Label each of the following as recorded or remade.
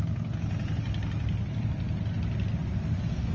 recorded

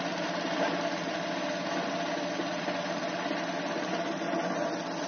recorded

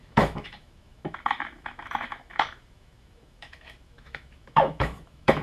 remade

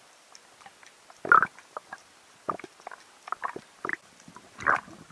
recorded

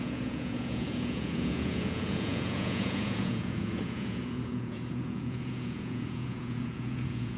remade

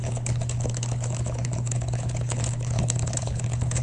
remade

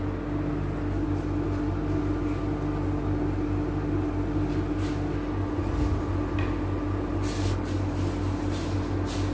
recorded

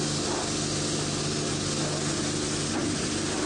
recorded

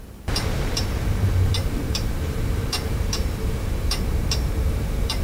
remade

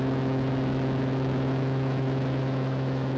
remade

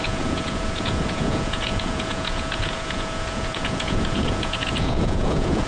remade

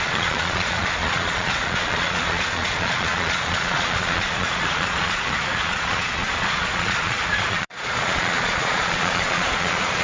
remade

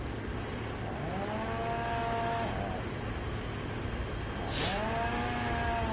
recorded